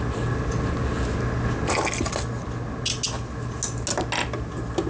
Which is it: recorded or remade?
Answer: recorded